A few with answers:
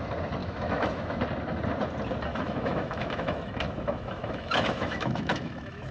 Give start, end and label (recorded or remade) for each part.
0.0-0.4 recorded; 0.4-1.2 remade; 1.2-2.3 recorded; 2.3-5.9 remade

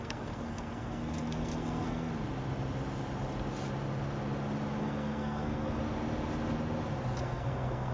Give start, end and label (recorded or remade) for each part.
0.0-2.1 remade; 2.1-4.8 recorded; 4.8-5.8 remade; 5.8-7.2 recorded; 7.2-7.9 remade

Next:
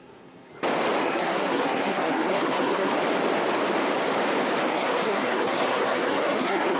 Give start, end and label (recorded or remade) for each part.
0.0-0.5 remade; 0.5-1.0 recorded; 1.0-2.9 remade; 2.9-4.7 recorded; 4.7-6.8 remade

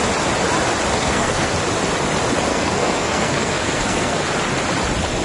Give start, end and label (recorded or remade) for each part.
0.0-1.0 recorded; 1.0-1.5 remade; 1.5-2.5 recorded; 2.5-4.2 remade; 4.2-5.2 recorded

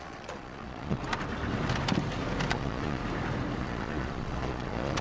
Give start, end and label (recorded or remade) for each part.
0.0-1.0 remade; 1.0-2.5 recorded; 2.5-3.0 remade; 3.0-3.6 recorded; 3.6-5.0 remade